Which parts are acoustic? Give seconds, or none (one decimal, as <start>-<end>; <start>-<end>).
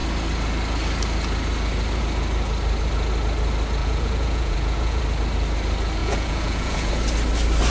0.0-3.8; 5.0-6.0; 6.9-7.7